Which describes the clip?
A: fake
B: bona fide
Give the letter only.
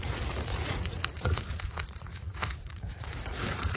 A